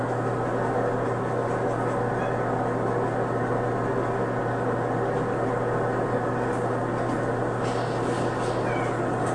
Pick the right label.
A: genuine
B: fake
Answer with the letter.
A